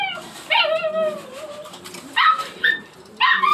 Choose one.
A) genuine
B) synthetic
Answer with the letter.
B